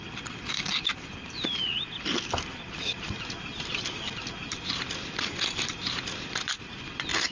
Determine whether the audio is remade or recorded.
recorded